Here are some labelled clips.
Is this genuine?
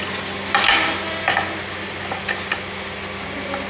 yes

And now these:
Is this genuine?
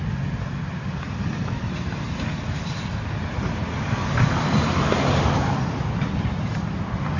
yes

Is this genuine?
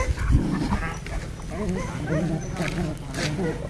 yes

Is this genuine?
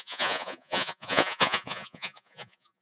no